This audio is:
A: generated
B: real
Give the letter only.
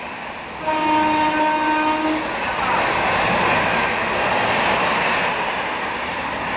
B